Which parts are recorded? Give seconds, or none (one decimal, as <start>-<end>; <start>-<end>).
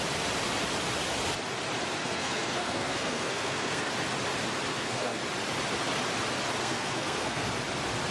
0.0-2.0; 3.9-4.7; 5.2-6.6; 7.5-8.1